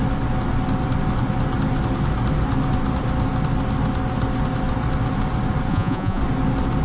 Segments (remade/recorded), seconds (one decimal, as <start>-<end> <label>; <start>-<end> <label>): 0.0-5.7 recorded; 5.7-6.2 remade; 6.2-6.8 recorded